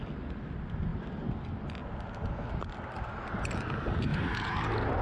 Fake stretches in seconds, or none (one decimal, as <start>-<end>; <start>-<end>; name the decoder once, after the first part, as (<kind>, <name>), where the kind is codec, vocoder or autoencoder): none

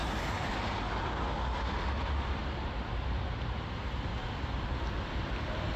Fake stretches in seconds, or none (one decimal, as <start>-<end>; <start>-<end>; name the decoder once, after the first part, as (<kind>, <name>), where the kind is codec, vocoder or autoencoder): 0.0-0.8 (vocoder, BigVGAN v2); 2.4-3.8; 4.2-4.7

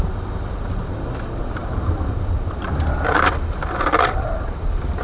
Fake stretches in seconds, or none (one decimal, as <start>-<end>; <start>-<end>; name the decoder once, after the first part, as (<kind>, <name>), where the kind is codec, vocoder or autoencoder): 0.0-5.0 (vocoder, BigVGAN v2)

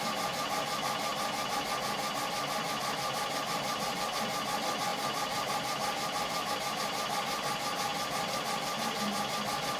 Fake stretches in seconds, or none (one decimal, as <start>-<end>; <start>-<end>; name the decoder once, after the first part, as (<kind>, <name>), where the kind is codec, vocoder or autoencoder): 4.9-6.5 (vocoder, BigVGAN v2)

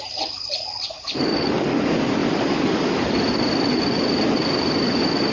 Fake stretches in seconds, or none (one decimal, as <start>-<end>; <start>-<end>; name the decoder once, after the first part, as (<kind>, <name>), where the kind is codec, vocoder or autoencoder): 2.2-3.3 (vocoder, BigVGAN v2)